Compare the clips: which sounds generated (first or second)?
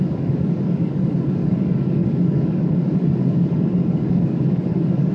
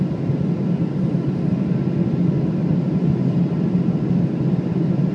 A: first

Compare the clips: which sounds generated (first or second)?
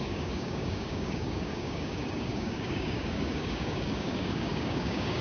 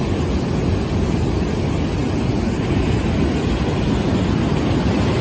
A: first